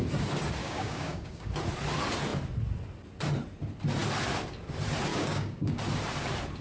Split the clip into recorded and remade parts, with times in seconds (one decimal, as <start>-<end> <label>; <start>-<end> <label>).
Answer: 0.0-0.6 recorded; 0.6-1.5 remade; 1.5-5.1 recorded; 5.1-5.8 remade; 5.8-6.6 recorded